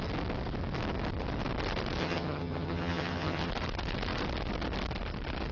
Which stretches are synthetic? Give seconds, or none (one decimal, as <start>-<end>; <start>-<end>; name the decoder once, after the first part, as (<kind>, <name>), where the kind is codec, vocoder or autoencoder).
2.0-3.5 (vocoder, HiFi-GAN)